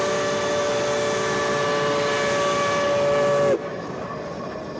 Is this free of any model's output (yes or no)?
yes